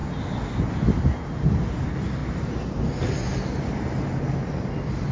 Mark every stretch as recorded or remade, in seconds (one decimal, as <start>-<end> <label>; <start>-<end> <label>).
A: 0.0-5.1 recorded